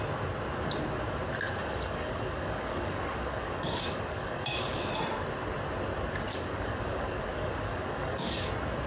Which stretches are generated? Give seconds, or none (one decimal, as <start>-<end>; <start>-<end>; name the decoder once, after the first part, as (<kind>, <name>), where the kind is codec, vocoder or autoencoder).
1.6-4.9 (codec, DAC); 6.3-8.5